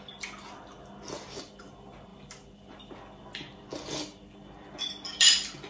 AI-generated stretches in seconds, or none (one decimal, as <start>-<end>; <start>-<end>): none